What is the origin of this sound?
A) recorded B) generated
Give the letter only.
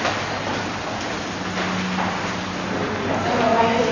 A